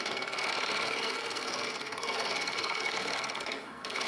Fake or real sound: fake